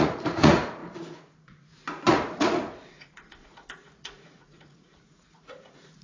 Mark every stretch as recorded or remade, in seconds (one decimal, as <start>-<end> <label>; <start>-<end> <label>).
0.0-6.0 remade